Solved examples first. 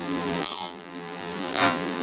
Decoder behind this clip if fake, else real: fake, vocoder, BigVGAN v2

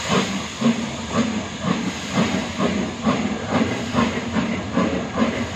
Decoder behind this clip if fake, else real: real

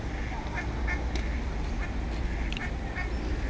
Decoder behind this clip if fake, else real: real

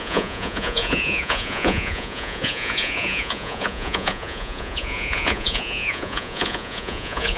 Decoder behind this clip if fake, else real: fake, vocoder, Vocos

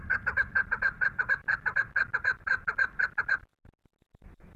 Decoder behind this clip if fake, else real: real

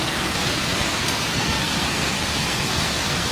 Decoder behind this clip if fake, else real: fake, codec, SNAC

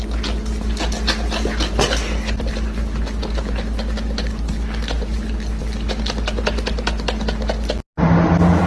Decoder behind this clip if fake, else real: real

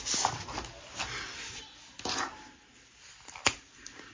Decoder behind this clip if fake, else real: real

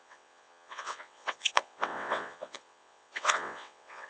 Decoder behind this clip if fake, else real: fake, vocoder, WaveNeXt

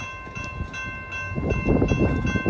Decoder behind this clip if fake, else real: real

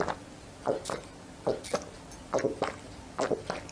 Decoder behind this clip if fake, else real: real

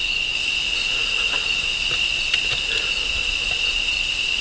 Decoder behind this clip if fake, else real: real